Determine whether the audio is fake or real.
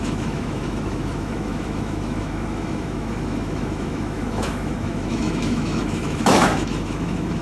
fake